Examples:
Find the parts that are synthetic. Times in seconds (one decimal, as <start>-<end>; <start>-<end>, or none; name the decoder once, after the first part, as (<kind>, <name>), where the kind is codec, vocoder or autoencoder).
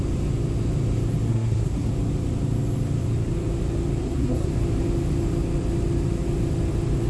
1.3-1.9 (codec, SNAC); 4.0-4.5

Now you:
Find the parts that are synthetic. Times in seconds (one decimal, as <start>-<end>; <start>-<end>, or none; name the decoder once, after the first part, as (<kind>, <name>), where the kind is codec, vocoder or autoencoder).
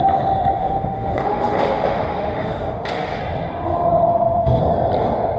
0.6-3.2 (autoencoder, DAC-VAE); 4.1-4.6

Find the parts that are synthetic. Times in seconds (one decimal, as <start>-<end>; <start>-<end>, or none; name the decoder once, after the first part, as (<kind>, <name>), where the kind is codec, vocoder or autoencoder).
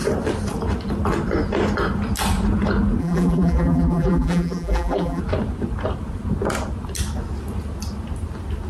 3.0-5.2 (vocoder, BigVGAN v2)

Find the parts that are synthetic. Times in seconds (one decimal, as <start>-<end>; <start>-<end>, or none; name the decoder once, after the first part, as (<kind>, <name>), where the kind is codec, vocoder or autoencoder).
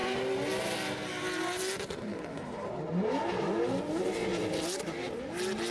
none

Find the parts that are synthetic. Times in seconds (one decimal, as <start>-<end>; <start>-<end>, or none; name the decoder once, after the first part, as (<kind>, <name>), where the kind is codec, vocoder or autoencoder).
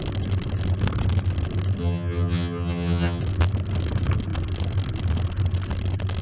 1.8-3.2 (vocoder, HiFi-GAN)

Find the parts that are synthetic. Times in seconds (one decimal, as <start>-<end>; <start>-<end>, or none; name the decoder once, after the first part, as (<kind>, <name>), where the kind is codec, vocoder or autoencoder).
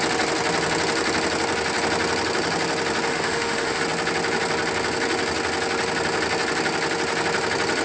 3.1-3.8 (autoencoder, DAC-VAE)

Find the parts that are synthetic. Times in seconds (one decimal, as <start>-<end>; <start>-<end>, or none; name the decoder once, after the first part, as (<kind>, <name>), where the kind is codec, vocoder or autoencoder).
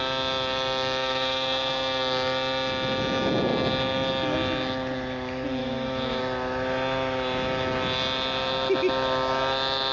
1.0-2.0 (autoencoder, DAC-VAE); 5.6-6.2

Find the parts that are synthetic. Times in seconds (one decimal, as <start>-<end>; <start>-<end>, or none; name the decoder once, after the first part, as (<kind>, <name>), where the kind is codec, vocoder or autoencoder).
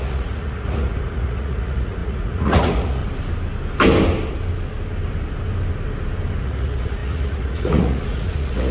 0.0-3.0 (vocoder, Vocos); 6.4-8.7